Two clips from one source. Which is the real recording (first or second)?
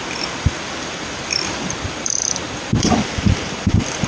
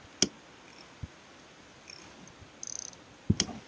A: second